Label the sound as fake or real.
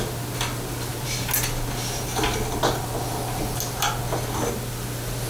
real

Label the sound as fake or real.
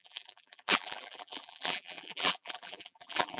fake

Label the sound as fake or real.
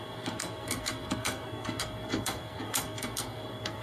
fake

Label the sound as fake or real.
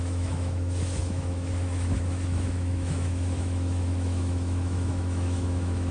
fake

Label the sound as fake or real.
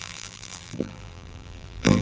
fake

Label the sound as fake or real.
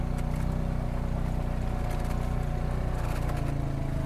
real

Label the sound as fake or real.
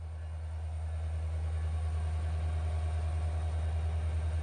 real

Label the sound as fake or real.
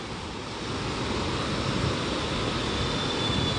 real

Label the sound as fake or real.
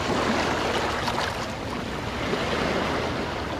real